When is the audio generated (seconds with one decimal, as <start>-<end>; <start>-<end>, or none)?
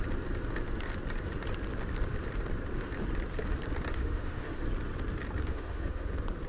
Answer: 3.9-4.6; 5.5-6.1